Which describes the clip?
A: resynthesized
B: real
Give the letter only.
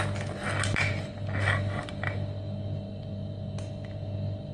B